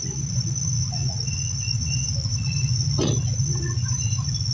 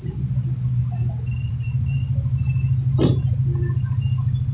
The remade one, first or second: first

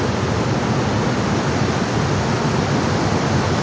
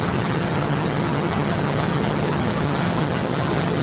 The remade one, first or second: second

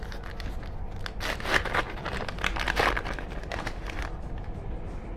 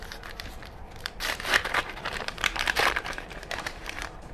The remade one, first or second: second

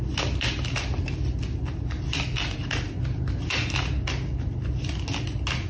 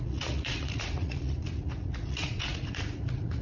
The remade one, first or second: second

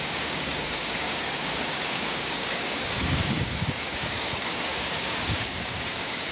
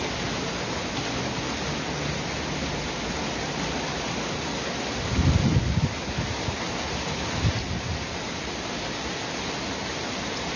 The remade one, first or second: first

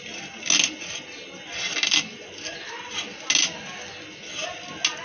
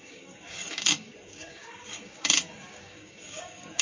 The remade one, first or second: second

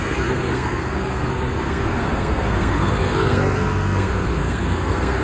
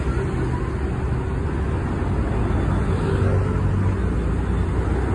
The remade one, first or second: first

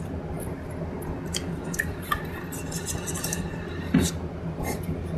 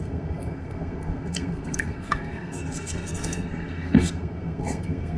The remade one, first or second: second